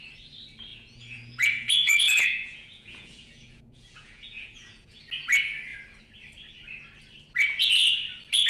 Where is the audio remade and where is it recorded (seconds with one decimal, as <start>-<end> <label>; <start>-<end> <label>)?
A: 0.0-0.7 recorded; 0.7-5.0 remade; 5.0-8.5 recorded